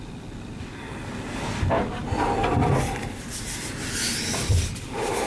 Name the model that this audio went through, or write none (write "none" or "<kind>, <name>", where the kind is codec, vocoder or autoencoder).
none